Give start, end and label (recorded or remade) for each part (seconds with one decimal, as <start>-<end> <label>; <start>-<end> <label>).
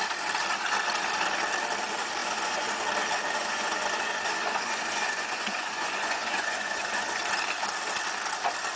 0.0-2.2 recorded; 2.2-2.7 remade; 2.7-3.4 recorded; 3.4-7.2 remade; 7.2-8.8 recorded